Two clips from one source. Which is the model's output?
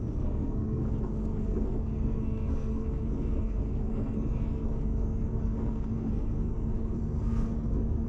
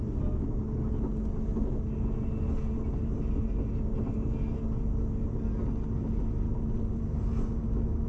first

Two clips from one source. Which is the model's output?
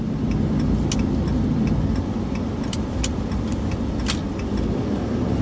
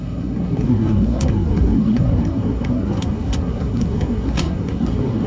second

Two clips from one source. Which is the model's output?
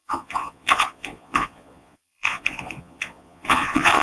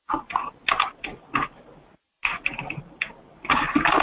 first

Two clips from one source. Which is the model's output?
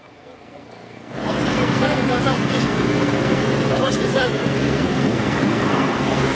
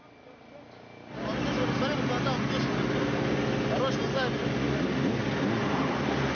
first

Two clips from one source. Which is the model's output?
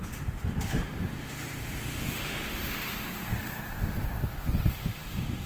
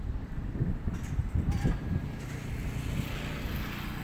first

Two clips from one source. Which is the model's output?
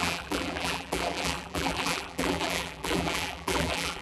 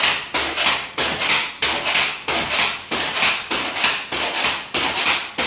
first